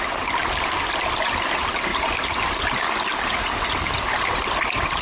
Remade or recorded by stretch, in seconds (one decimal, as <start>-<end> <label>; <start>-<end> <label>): 0.0-5.0 recorded